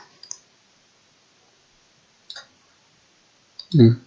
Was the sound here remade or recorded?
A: recorded